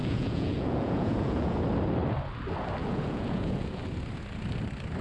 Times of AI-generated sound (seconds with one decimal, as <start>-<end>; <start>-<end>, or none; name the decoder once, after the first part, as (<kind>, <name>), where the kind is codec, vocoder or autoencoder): 0.0-1.6 (vocoder, Vocos); 2.8-3.8